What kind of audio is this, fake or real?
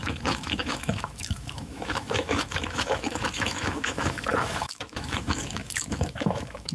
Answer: fake